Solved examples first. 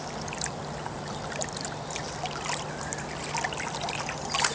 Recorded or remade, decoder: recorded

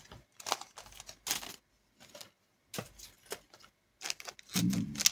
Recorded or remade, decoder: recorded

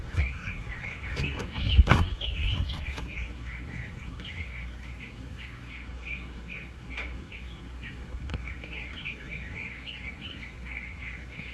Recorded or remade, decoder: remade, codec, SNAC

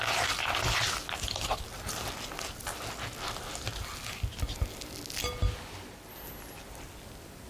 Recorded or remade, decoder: recorded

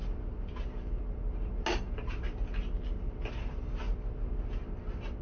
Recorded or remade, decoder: recorded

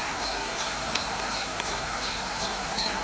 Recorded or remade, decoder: remade, codec, SNAC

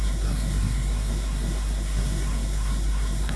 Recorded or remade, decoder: remade, codec, SNAC